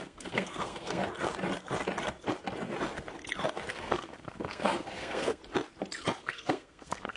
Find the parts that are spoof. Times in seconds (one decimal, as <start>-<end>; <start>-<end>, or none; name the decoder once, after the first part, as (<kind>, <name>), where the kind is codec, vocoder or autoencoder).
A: 0.0-1.0 (codec, SNAC); 3.7-5.4; 6.2-7.2